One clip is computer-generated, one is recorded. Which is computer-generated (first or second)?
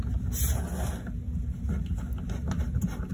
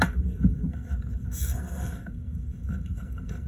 second